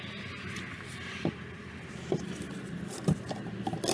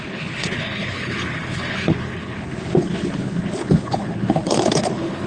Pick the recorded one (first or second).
first